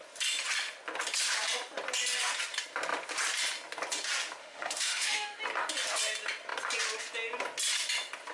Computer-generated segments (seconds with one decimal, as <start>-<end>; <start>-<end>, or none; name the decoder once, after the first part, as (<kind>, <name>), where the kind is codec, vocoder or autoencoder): 4.4-5.4 (autoencoder, DAC-VAE)